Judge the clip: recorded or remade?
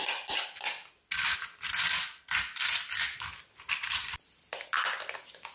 recorded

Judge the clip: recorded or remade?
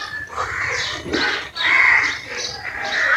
recorded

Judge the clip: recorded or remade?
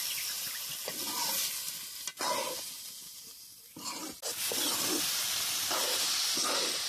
recorded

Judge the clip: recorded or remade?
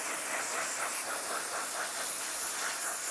recorded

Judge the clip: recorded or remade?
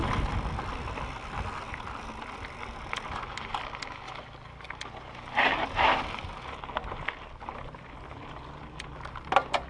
recorded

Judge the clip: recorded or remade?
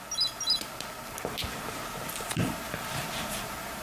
recorded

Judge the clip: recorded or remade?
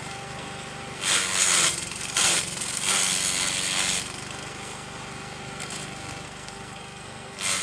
remade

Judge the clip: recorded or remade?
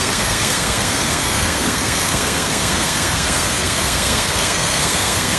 remade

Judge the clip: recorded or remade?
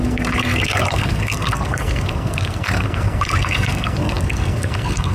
remade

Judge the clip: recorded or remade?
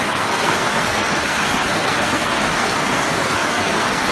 remade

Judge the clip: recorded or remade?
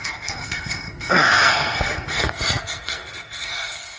remade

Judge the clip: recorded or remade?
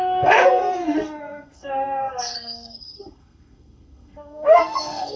remade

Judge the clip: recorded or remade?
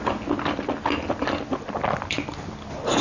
recorded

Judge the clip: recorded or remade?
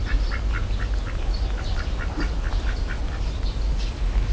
recorded